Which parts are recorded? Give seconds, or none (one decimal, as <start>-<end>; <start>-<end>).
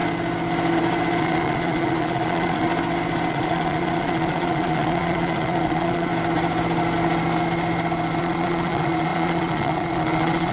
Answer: 0.0-1.2; 2.7-3.3; 6.1-8.2